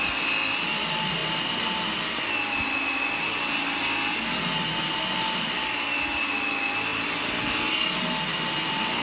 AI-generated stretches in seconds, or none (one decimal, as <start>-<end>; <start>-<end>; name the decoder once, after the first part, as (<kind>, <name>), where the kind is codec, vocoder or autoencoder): none